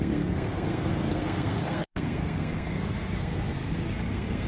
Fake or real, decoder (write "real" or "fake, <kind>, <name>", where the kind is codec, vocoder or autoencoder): fake, codec, SNAC